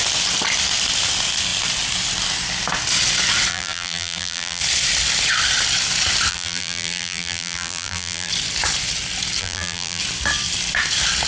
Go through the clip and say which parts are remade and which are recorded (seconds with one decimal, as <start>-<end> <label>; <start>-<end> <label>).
0.0-3.5 recorded; 3.5-4.6 remade; 4.6-6.3 recorded; 6.3-8.3 remade; 8.3-9.4 recorded; 9.4-10.0 remade; 10.0-11.3 recorded